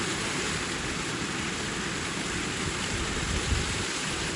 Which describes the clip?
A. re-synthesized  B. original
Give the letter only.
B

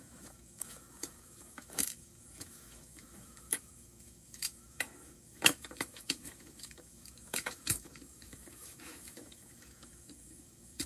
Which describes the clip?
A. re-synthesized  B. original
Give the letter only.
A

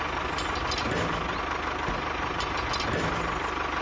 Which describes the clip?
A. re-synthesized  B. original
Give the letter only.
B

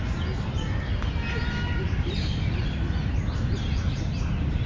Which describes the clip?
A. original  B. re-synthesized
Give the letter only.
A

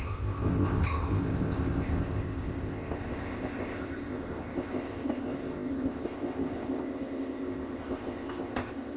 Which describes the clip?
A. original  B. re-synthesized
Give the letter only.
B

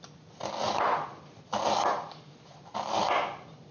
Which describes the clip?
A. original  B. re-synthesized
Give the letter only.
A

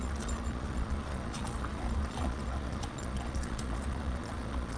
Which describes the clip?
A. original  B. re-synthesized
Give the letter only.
B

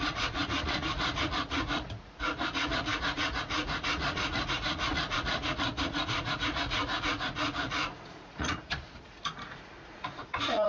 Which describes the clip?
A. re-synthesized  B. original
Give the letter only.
A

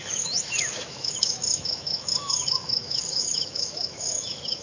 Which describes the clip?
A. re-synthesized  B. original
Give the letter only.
A